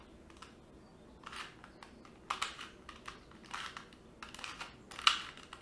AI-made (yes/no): no